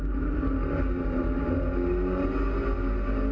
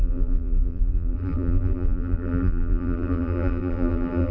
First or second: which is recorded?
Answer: first